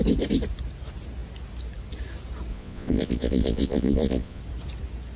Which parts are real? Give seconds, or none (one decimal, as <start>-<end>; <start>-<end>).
0.0-2.5; 4.4-5.2